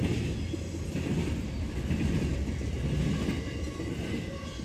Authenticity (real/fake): real